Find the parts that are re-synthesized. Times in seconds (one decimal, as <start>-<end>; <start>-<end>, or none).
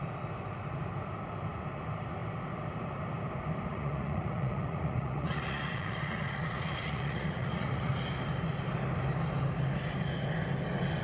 3.7-7.9